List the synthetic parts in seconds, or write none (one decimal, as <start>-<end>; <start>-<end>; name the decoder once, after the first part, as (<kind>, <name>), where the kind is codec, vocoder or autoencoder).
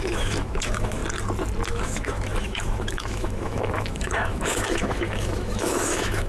0.0-1.0 (autoencoder, DAC-VAE); 1.7-6.3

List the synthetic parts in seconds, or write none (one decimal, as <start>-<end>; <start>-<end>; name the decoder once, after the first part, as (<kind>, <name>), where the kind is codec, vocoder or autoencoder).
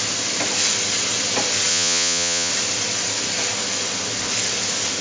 1.7-2.5 (vocoder, Vocos)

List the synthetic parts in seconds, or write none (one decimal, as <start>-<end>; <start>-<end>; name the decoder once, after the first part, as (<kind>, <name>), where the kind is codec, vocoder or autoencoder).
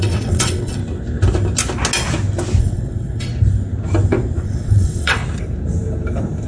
0.0-0.8 (vocoder, WaveNeXt); 2.6-3.3; 4.4-5.2